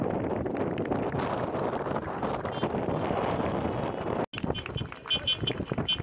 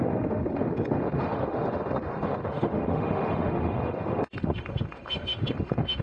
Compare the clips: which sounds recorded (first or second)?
first